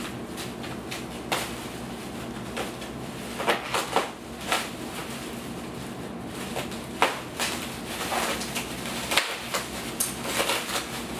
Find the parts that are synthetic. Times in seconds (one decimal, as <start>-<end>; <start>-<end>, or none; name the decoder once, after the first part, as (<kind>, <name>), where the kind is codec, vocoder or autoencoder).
none